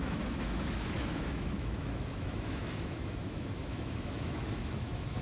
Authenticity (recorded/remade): remade